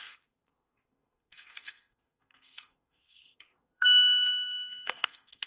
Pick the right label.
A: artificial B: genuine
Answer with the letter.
A